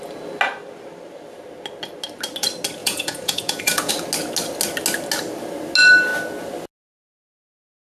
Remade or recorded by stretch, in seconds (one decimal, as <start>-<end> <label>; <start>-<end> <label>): 0.0-2.8 recorded; 2.8-3.9 remade; 3.9-7.8 recorded